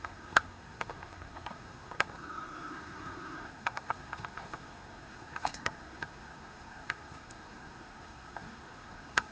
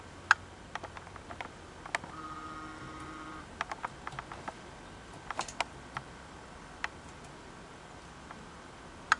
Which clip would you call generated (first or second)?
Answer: first